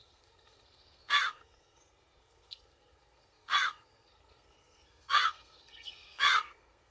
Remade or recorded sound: remade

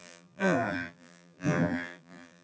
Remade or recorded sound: remade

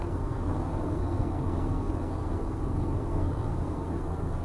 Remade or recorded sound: remade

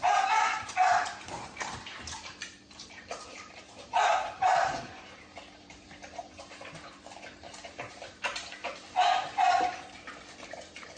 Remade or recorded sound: remade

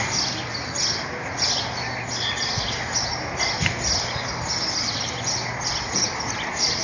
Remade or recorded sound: recorded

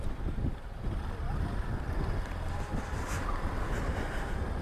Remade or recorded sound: recorded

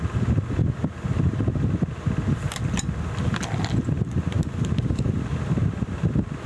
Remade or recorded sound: recorded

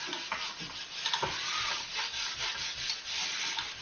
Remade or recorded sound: recorded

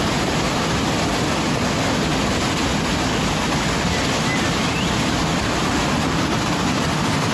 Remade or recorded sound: recorded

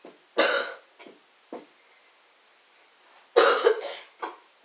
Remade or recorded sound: recorded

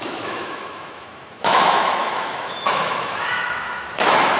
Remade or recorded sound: remade